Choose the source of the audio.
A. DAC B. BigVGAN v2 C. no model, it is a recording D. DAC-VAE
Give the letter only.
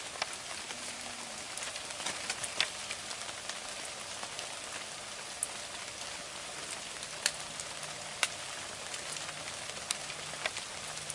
C